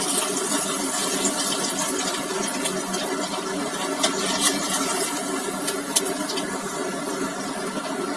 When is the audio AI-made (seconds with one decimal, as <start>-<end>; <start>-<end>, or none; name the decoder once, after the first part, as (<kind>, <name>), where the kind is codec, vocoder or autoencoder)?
none